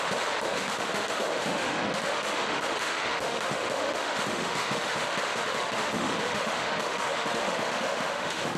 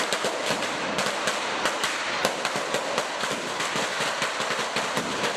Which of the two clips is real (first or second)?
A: second